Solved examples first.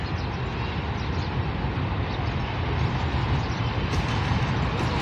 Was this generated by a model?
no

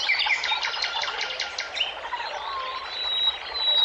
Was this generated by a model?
yes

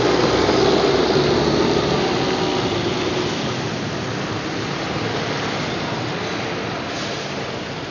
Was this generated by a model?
no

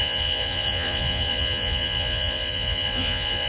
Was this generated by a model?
yes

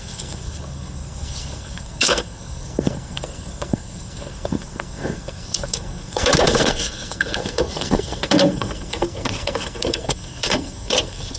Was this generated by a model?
yes